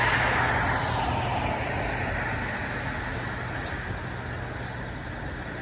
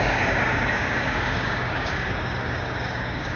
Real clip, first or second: first